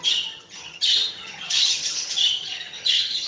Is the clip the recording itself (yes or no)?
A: no